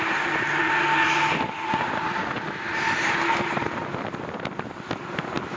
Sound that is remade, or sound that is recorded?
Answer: recorded